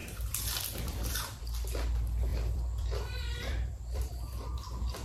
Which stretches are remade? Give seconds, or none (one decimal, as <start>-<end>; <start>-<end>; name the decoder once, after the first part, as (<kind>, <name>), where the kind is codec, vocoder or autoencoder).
0.0-1.4 (vocoder, BigVGAN v2); 2.3-4.1